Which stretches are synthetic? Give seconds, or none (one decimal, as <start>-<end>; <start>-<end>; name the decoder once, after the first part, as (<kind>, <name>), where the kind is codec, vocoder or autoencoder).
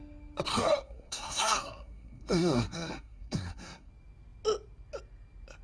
0.5-3.9 (codec, SNAC)